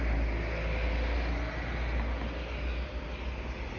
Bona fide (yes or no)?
yes